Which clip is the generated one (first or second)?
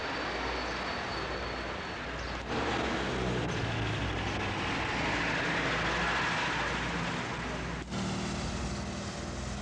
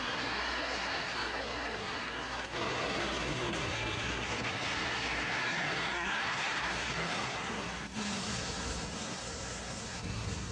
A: second